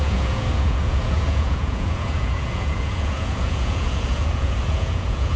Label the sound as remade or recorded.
remade